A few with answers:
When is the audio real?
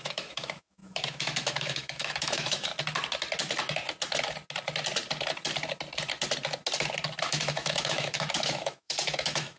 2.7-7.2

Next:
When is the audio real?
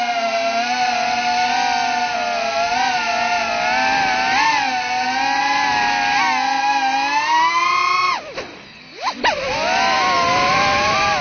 0.0-11.2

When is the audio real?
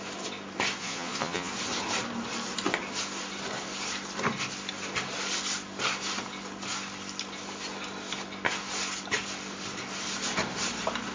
0.0-0.8; 1.5-11.1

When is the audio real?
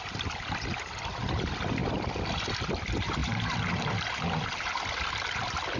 0.0-3.2; 4.7-5.8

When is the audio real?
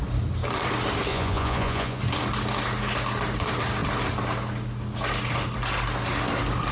0.0-1.1; 2.0-6.7